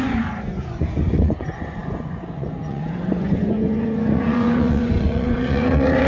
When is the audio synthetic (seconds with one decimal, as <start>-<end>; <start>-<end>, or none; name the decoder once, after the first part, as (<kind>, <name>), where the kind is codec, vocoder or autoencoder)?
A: 0.0-6.1 (vocoder, Vocos)